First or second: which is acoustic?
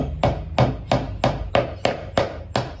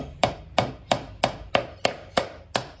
first